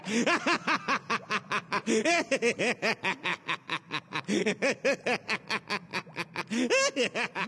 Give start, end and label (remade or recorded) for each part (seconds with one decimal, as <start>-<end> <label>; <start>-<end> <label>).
0.0-7.5 recorded